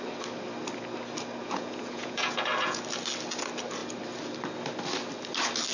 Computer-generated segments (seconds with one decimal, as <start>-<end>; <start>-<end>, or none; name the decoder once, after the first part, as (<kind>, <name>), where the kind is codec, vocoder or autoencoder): 1.4-2.8 (vocoder, Vocos)